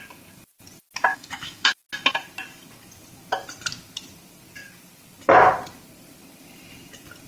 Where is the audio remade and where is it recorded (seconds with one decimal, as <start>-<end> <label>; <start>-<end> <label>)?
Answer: 0.0-1.1 recorded; 1.1-1.7 remade; 1.7-7.3 recorded